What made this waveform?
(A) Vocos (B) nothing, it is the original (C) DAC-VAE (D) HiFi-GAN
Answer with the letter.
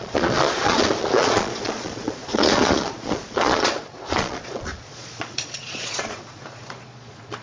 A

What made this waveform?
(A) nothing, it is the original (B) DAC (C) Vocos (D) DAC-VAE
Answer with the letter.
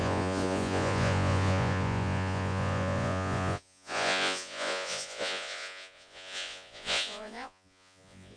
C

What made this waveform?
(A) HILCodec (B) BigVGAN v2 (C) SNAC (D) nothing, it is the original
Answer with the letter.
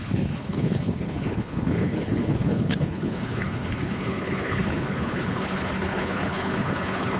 A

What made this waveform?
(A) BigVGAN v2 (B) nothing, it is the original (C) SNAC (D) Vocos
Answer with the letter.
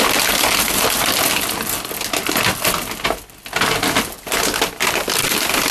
B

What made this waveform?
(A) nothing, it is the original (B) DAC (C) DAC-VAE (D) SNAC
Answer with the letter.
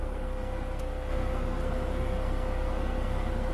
D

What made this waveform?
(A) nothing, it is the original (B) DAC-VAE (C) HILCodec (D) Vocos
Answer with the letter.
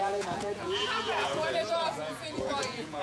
D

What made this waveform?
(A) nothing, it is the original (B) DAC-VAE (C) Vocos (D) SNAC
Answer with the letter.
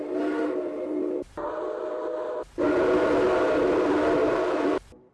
A